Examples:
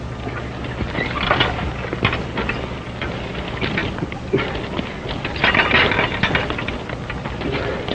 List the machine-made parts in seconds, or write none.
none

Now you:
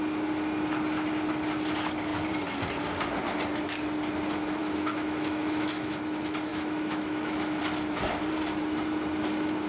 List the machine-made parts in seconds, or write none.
4.6-6.0 (autoencoder, DAC-VAE); 6.5-7.6

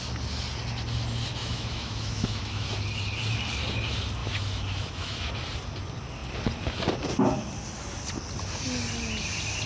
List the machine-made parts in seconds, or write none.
1.4-2.8 (autoencoder, DAC-VAE); 4.2-5.3